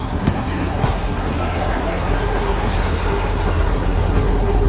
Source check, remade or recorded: remade